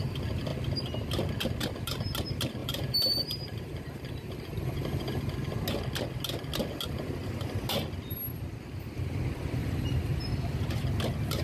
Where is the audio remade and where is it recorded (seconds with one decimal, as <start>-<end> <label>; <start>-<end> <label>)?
0.0-2.6 recorded; 2.6-5.2 remade; 5.2-9.6 recorded; 9.6-10.3 remade; 10.3-11.4 recorded